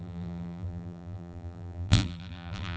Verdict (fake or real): fake